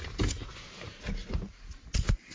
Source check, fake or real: real